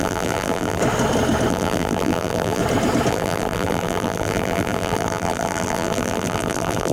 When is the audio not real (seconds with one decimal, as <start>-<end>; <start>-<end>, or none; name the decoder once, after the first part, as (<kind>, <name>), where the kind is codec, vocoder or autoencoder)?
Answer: 0.0-0.8 (vocoder, BigVGAN v2); 1.5-2.6; 3.1-6.9